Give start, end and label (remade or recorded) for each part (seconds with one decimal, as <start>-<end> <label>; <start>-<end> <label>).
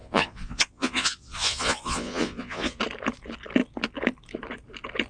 0.0-2.8 remade; 2.8-5.1 recorded